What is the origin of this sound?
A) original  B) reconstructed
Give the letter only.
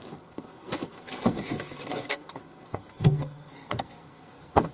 B